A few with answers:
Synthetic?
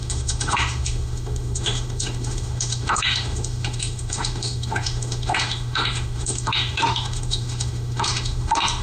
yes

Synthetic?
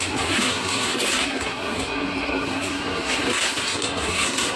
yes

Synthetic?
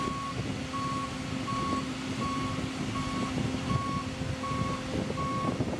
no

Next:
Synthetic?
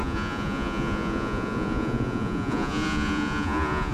yes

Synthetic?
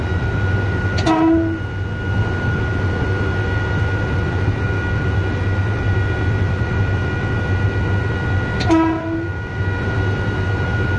no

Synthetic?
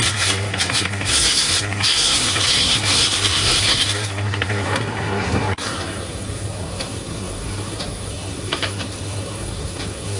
yes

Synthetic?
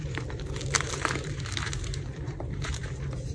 yes